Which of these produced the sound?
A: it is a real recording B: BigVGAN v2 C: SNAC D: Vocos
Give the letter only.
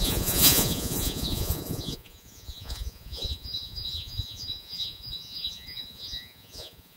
D